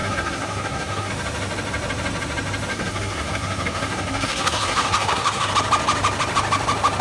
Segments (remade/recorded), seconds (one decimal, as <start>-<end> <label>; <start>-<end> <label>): 0.0-1.1 remade; 1.1-2.7 recorded; 2.7-5.5 remade; 5.5-7.0 recorded

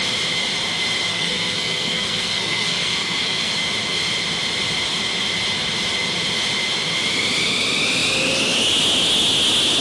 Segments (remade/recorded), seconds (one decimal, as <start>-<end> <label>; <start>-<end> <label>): 0.0-1.1 recorded; 1.1-3.5 remade; 3.5-9.8 recorded